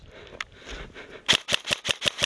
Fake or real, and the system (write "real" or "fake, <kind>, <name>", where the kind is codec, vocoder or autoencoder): real